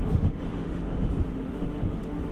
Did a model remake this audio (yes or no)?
yes